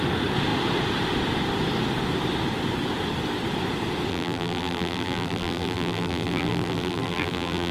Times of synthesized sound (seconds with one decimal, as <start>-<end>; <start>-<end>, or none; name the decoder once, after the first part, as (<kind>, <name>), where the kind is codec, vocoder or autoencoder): 4.1-7.7 (vocoder, BigVGAN v2)